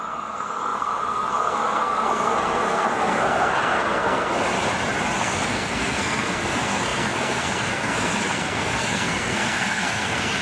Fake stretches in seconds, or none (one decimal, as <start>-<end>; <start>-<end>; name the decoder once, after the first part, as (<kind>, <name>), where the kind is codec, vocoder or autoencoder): 0.0-4.3 (codec, SNAC); 5.2-10.4